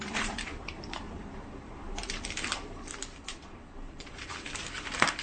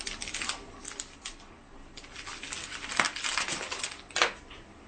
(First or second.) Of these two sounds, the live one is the second